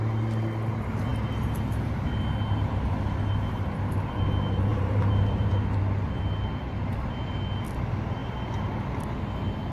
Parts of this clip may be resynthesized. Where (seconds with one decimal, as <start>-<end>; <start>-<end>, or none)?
4.7-5.8

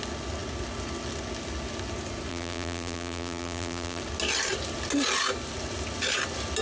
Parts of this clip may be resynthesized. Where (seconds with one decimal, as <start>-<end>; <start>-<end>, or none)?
2.3-4.0

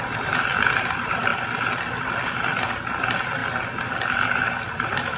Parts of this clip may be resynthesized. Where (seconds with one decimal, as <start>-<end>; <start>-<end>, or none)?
0.0-1.3; 2.4-3.4; 3.9-5.2

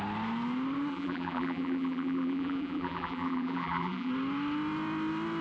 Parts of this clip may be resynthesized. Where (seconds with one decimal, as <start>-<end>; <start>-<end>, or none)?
0.9-4.1

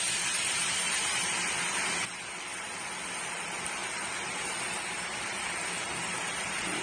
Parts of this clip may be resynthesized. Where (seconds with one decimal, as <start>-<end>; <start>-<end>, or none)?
0.0-6.8